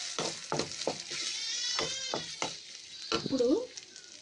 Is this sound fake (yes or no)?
no